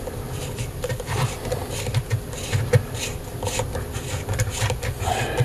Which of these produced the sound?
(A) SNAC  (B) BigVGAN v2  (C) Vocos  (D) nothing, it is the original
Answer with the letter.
D